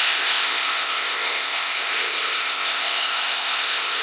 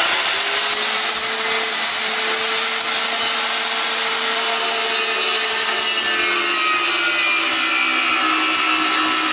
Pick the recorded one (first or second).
second